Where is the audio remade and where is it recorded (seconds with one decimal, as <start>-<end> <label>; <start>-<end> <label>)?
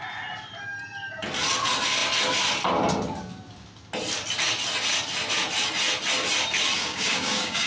0.0-6.8 recorded; 6.8-7.7 remade